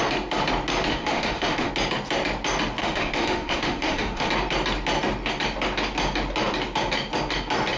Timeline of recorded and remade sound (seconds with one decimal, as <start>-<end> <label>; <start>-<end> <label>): 0.0-0.9 recorded; 0.9-1.7 remade; 1.7-2.8 recorded; 2.8-4.3 remade; 4.3-7.8 recorded